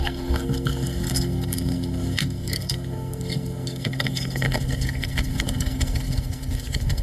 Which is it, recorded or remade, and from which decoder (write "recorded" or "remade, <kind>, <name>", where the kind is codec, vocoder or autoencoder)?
remade, codec, SNAC